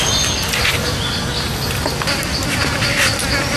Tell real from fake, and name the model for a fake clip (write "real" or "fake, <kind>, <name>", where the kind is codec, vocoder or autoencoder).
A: real